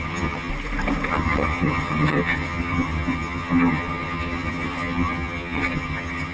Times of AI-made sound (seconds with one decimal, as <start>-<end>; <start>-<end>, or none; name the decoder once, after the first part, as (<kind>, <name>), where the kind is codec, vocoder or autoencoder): 0.0-0.5 (vocoder, HiFi-GAN); 1.1-6.3